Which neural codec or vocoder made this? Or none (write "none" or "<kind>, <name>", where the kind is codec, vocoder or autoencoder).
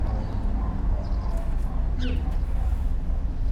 none